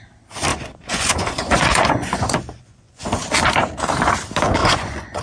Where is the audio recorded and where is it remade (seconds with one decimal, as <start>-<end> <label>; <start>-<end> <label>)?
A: 0.0-0.5 recorded; 0.5-3.0 remade; 3.0-4.6 recorded; 4.6-5.2 remade

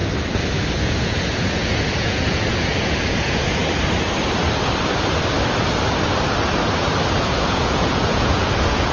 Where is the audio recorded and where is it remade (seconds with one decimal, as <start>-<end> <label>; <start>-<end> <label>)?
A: 0.0-0.7 recorded; 0.7-3.6 remade; 3.6-7.2 recorded; 7.2-8.9 remade

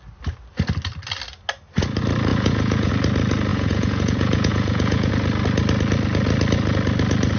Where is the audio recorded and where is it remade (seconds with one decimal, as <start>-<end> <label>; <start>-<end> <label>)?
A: 0.0-2.3 recorded; 2.3-2.9 remade; 2.9-3.5 recorded; 3.5-5.1 remade; 5.1-7.4 recorded

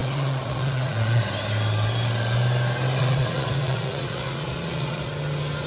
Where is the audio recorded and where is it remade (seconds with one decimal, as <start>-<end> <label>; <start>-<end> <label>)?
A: 0.0-1.2 remade; 1.2-3.0 recorded; 3.0-5.1 remade; 5.1-5.7 recorded